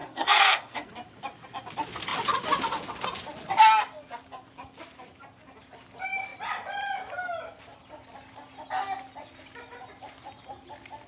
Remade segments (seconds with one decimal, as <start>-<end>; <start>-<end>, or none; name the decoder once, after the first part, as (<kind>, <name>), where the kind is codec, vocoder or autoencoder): 0.0-0.9 (codec, SNAC)